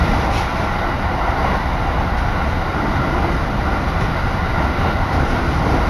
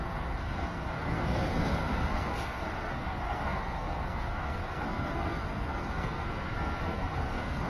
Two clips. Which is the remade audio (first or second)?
second